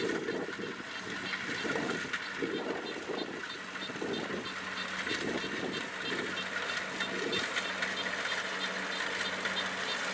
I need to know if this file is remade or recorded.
recorded